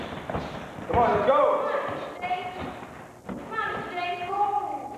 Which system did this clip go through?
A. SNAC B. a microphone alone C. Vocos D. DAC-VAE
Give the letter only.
B